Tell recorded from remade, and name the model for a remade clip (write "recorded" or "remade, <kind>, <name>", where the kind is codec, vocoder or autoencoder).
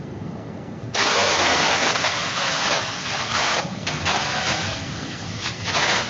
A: remade, codec, SNAC